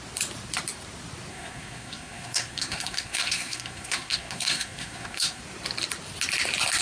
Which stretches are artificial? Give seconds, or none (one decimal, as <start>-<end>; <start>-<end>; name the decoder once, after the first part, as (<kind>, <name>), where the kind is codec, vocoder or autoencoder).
1.3-5.4 (codec, SNAC)